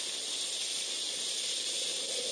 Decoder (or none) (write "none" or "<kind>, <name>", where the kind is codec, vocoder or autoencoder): none